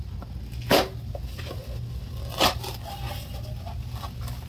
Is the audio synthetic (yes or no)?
no